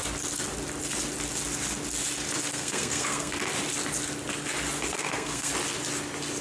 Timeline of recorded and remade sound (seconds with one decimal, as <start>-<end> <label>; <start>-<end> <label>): 0.0-2.5 recorded; 2.5-3.3 remade; 3.3-4.9 recorded; 4.9-5.5 remade; 5.5-6.4 recorded